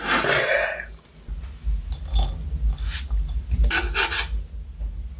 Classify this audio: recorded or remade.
recorded